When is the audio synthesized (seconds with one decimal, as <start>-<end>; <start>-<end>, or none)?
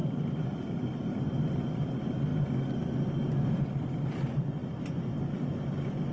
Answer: none